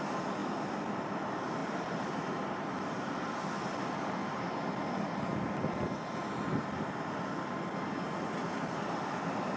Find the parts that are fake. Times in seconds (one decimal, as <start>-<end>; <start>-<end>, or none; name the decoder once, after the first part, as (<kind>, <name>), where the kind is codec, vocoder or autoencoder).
none